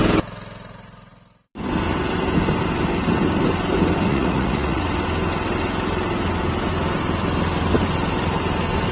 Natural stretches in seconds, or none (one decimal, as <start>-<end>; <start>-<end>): 0.0-4.1; 4.8-8.9